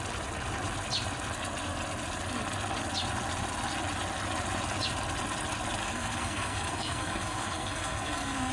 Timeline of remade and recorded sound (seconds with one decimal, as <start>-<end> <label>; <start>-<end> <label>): 0.0-5.8 recorded; 5.8-8.5 remade